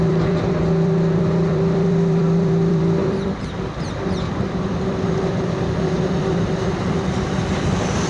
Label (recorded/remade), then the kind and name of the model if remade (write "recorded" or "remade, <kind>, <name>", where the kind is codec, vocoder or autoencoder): remade, vocoder, BigVGAN v2